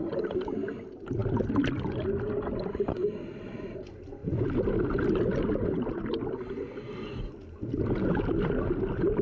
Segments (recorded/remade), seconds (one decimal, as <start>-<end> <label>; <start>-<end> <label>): 0.0-9.2 recorded